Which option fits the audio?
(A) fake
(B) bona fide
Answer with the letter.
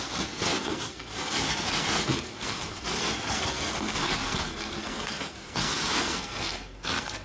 A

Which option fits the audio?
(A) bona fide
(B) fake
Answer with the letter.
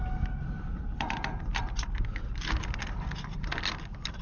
A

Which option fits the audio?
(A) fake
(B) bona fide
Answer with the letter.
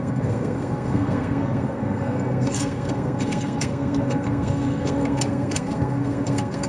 A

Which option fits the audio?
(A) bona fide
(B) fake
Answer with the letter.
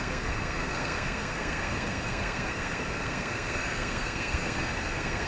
B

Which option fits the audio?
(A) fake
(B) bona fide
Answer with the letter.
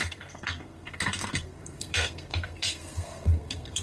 A